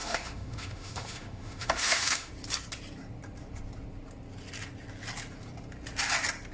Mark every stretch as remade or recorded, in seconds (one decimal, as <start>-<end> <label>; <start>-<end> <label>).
0.0-2.3 remade; 2.3-6.5 recorded